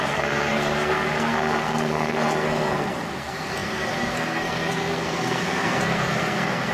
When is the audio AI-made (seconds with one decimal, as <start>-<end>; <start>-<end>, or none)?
0.0-6.7